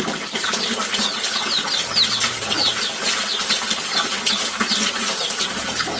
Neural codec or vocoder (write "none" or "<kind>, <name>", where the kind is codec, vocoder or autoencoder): none